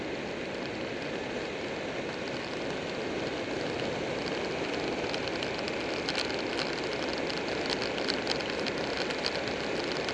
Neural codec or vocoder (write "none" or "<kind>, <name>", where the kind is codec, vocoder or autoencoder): none